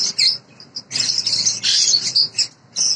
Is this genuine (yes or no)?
yes